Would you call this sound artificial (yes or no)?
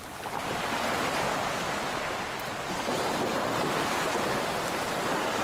no